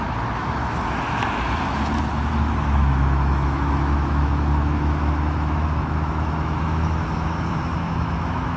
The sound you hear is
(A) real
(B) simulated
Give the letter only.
B